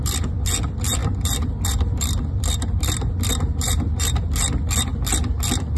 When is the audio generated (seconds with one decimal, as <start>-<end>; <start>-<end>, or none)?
none